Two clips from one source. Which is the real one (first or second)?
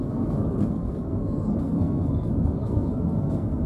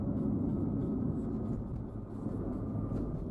second